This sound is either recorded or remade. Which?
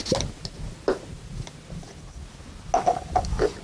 recorded